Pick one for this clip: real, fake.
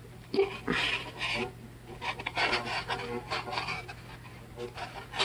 real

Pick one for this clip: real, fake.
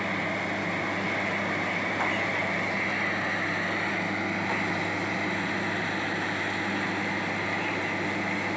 real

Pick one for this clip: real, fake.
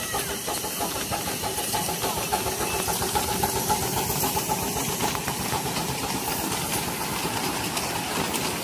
real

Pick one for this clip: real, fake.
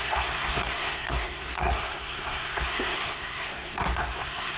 fake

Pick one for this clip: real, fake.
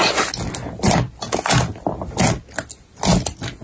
real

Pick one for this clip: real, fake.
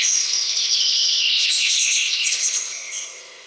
fake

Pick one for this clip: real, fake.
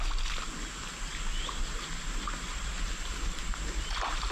real